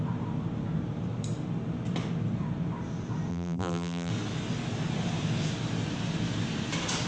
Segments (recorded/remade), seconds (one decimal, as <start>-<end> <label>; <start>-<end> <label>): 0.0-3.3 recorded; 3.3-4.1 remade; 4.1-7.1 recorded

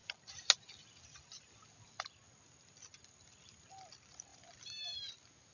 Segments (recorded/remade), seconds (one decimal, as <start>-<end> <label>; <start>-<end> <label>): 0.0-5.5 recorded

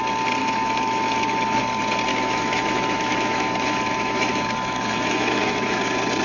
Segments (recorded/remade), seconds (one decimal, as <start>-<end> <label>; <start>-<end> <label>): 0.0-0.4 recorded; 0.4-1.6 remade; 1.6-2.1 recorded; 2.1-5.8 remade; 5.8-6.2 recorded

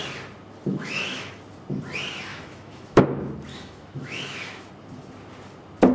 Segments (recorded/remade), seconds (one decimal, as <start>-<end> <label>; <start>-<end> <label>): 0.0-0.7 recorded; 0.7-1.3 remade; 1.3-2.3 recorded; 2.3-3.0 remade; 3.0-3.5 recorded; 3.5-4.7 remade; 4.7-5.9 recorded

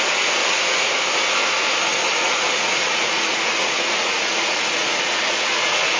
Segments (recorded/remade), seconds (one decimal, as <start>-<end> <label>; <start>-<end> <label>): 0.0-0.4 recorded; 0.4-0.9 remade; 0.9-2.2 recorded; 2.2-6.0 remade

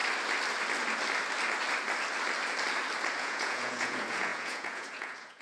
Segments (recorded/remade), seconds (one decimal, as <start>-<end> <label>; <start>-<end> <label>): 0.0-3.2 recorded; 3.2-5.4 remade